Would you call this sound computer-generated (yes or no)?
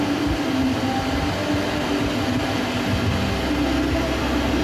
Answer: no